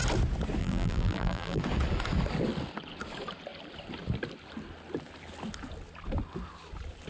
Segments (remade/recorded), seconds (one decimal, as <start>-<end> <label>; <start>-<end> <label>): 0.0-0.6 recorded; 0.6-1.6 remade; 1.6-7.1 recorded